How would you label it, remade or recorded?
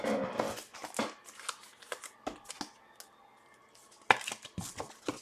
recorded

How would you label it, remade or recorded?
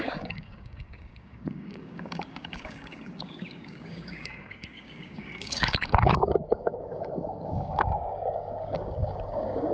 remade